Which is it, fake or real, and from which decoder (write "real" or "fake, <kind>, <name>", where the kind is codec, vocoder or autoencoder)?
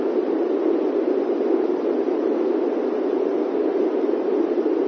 real